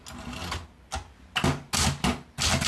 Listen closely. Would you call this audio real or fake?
real